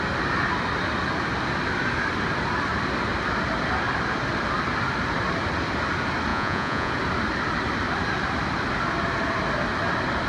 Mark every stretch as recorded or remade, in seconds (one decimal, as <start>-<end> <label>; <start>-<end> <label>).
0.0-6.3 recorded; 6.3-6.9 remade; 6.9-10.3 recorded